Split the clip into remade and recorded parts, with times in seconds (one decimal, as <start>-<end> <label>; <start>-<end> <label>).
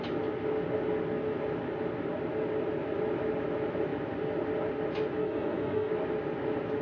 0.0-5.2 recorded; 5.2-5.9 remade; 5.9-6.8 recorded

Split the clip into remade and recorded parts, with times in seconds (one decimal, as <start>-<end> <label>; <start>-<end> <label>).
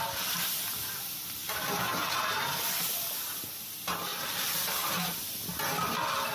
0.0-1.4 recorded; 1.4-2.4 remade; 2.4-4.1 recorded; 4.1-4.7 remade; 4.7-6.3 recorded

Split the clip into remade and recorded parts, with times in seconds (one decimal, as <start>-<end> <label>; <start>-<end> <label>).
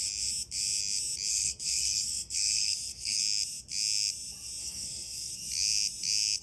0.0-1.3 recorded; 1.3-3.2 remade; 3.2-4.6 recorded; 4.6-5.3 remade; 5.3-6.4 recorded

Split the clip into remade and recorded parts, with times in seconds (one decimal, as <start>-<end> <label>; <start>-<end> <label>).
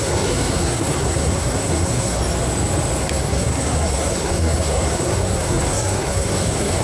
0.0-2.2 remade; 2.2-3.0 recorded; 3.0-6.8 remade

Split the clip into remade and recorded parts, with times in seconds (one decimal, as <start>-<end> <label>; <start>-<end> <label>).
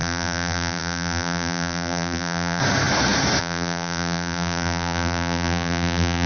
0.0-2.6 remade; 2.6-3.4 recorded; 3.4-6.3 remade